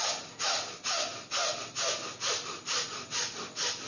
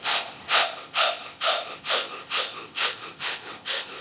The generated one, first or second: second